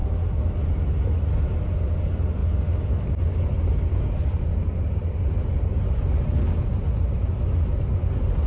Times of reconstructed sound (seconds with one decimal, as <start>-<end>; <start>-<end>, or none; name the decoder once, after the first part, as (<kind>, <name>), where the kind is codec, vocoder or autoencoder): none